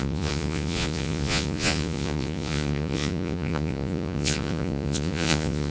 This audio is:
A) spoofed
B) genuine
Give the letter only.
A